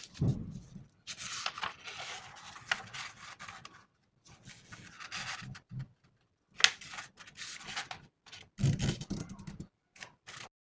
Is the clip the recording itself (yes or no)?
yes